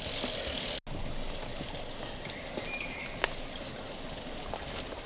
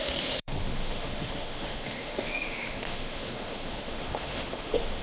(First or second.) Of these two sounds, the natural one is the first